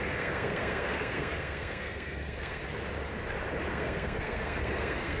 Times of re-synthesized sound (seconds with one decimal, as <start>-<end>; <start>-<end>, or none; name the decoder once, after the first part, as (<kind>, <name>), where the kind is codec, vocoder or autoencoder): 0.0-2.6 (codec, SNAC); 3.7-5.2